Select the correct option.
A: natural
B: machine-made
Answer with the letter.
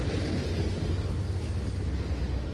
A